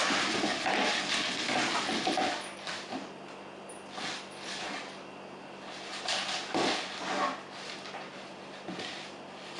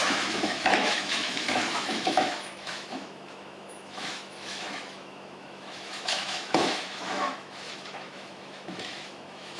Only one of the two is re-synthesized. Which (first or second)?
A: second